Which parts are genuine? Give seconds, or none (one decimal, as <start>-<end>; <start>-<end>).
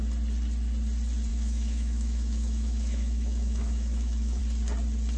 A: 0.0-1.3; 4.4-5.2